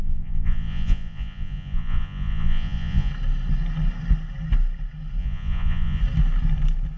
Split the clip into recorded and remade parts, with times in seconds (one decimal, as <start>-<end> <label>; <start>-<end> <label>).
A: 0.0-3.1 remade; 3.1-5.2 recorded; 5.2-6.0 remade; 6.0-7.0 recorded

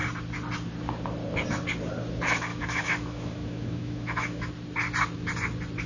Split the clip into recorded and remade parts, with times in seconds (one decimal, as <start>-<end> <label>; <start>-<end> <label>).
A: 0.0-2.5 recorded; 2.5-4.5 remade; 4.5-5.9 recorded